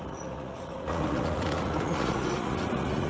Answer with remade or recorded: remade